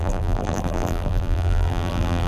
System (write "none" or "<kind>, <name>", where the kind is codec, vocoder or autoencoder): vocoder, BigVGAN v2